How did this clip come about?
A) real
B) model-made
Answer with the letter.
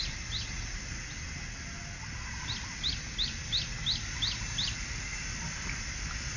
A